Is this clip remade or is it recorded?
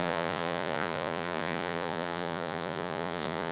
remade